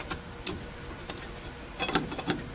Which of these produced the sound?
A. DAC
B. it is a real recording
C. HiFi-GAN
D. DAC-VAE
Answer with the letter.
B